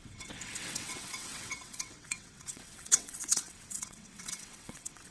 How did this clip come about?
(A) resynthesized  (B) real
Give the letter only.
A